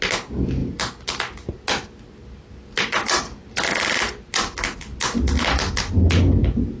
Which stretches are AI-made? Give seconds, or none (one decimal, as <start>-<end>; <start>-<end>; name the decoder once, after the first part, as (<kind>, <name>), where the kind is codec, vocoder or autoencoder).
none

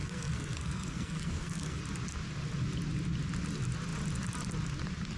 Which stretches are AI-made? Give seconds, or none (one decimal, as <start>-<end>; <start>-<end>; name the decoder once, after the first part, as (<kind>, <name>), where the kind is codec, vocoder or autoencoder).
0.0-1.8 (codec, SNAC)

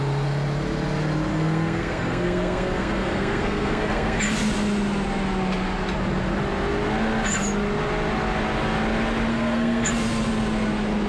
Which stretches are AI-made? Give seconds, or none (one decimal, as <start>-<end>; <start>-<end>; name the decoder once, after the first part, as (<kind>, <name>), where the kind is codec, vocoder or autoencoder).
1.3-4.2 (codec, SNAC); 9.3-9.9

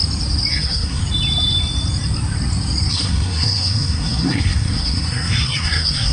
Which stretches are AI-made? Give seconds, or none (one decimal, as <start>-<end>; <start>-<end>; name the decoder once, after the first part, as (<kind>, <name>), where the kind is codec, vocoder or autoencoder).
0.5-1.0 (codec, SNAC); 2.9-6.1